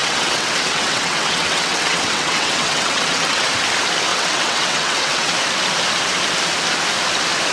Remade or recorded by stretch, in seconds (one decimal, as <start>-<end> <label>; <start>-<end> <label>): 0.0-3.5 remade; 3.5-4.1 recorded; 4.1-5.3 remade; 5.3-7.5 recorded